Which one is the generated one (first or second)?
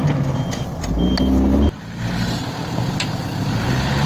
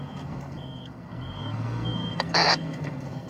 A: second